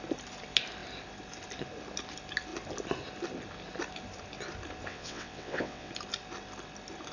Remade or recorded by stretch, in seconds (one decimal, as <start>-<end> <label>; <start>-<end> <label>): 0.0-4.9 recorded; 4.9-5.9 remade; 5.9-7.1 recorded